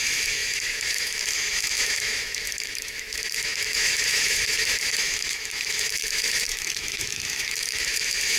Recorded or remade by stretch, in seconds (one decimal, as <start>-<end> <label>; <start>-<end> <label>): 0.0-8.4 remade